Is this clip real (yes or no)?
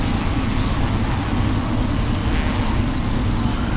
yes